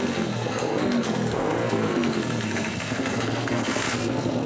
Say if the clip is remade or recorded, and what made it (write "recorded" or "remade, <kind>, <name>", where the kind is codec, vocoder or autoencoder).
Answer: remade, codec, SNAC